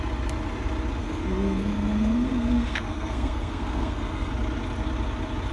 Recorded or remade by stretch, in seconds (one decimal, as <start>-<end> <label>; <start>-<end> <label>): 0.0-1.0 recorded; 1.0-4.3 remade; 4.3-5.5 recorded